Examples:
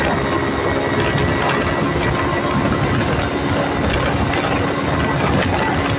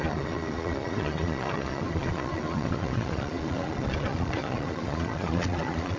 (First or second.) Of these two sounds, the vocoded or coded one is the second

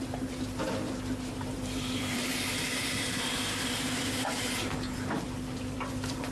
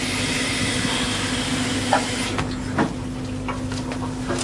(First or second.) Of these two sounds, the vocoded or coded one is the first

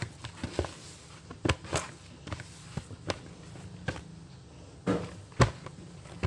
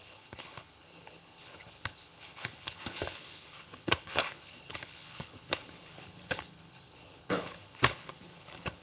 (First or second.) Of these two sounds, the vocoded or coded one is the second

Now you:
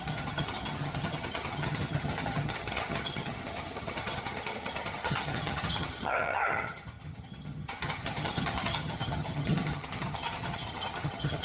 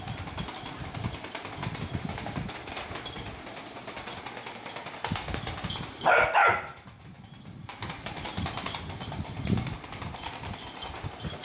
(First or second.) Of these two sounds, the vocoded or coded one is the first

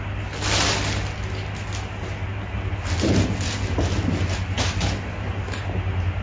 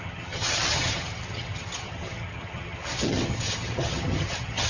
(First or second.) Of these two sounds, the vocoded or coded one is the second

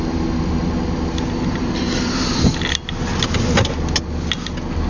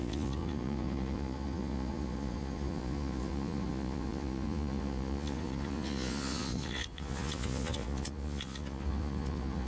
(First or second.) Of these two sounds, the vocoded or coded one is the second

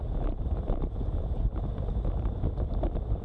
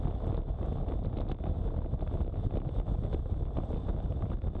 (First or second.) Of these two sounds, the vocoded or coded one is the first